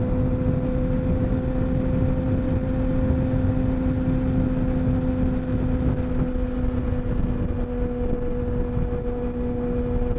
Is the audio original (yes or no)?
yes